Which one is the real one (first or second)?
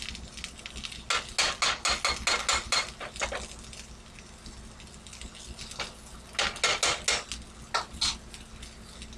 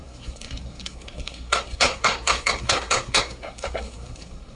first